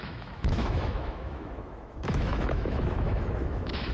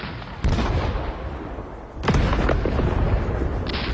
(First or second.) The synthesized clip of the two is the first